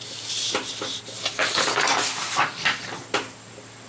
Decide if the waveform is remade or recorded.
recorded